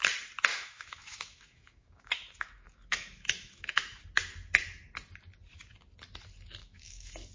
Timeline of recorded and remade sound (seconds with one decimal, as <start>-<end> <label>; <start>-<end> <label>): 0.0-0.5 recorded; 0.5-4.0 remade; 4.0-6.6 recorded; 6.6-7.3 remade